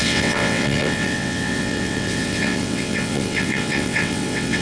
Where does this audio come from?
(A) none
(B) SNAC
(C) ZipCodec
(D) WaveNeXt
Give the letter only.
D